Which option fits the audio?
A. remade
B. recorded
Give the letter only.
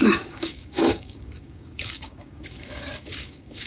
A